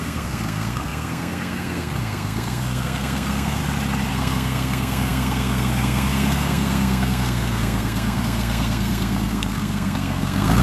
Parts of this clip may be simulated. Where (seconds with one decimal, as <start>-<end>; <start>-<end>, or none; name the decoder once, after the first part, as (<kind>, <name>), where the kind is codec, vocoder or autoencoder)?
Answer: 0.0-3.6 (codec, SNAC); 4.1-10.6